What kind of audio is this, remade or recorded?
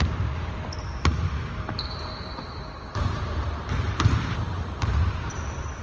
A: remade